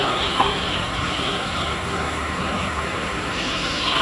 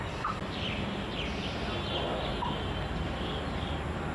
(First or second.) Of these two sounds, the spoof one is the first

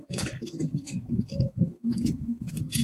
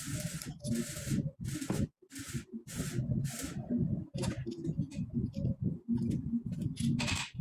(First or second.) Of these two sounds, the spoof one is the first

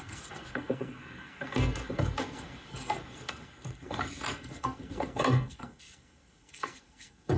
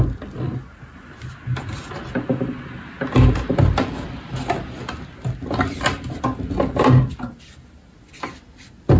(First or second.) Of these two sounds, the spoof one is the first